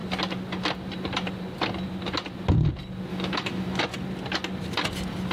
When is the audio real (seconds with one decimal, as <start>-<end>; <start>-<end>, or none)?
0.0-3.1; 3.8-5.3